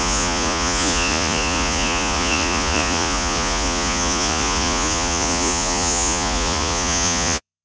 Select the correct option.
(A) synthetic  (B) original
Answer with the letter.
A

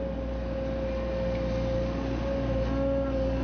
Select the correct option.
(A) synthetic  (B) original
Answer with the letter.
B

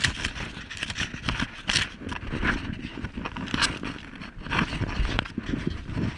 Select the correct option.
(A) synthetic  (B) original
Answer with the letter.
B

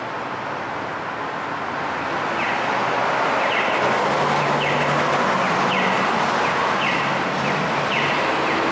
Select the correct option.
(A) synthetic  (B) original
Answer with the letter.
B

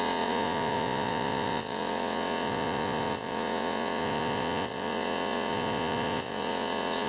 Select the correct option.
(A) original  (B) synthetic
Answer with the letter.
B